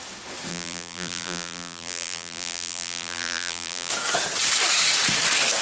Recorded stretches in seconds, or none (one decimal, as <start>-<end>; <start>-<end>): 0.0-0.5; 3.9-5.6